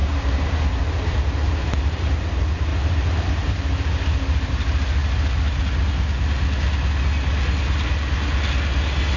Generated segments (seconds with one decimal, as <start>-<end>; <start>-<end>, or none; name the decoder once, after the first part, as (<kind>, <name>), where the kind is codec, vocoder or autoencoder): 0.0-2.2 (vocoder, BigVGAN v2); 2.7-4.5